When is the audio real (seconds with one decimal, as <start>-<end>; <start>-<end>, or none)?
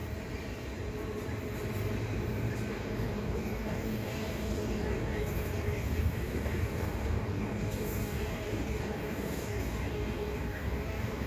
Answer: 0.0-2.7